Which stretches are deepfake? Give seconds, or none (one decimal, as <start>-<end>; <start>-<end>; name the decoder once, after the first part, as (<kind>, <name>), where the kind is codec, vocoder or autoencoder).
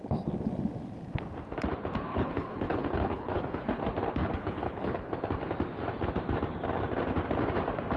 2.1-3.8 (codec, HILCodec); 4.2-5.1